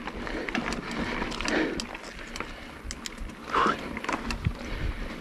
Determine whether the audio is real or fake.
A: real